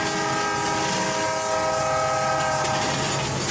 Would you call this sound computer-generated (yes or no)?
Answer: no